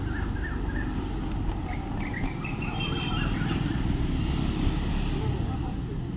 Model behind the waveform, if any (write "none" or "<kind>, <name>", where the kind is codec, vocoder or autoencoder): none